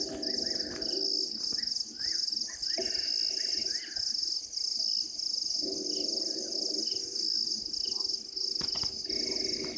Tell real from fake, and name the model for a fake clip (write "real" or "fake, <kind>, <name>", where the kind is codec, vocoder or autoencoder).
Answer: real